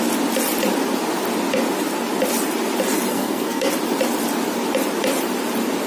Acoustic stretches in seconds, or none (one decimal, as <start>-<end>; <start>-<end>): 0.0-3.1; 3.7-5.9

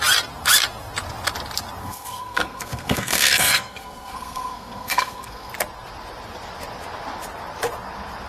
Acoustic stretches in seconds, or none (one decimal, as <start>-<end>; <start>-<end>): 0.0-1.8; 5.5-8.3

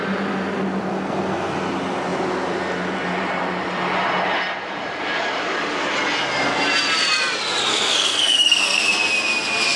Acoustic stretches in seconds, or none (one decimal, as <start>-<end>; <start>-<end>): 0.0-0.9; 1.5-7.7; 8.8-9.8

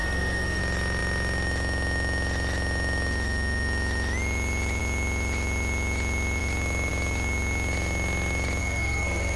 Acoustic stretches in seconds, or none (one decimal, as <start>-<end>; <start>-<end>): 0.6-8.6

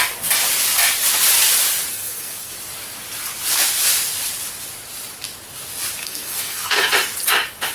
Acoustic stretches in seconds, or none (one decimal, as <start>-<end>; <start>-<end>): 0.0-1.9; 2.5-6.0; 6.9-7.7

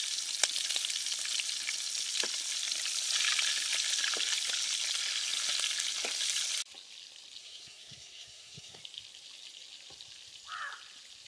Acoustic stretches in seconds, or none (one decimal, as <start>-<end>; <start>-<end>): 0.0-7.4; 8.8-11.3

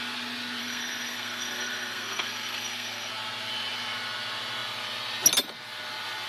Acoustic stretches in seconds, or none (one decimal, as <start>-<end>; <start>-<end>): 0.0-0.6; 3.1-6.3

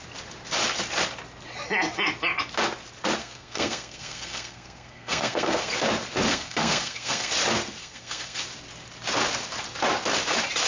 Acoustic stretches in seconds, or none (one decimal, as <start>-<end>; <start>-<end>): 0.0-3.2; 5.7-6.3; 7.3-7.8; 8.4-10.7